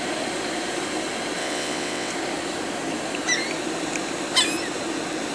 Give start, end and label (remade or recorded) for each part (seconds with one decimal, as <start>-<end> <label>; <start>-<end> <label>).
0.0-1.4 recorded; 1.4-2.1 remade; 2.1-5.3 recorded